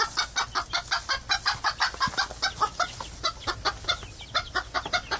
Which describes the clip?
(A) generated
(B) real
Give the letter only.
B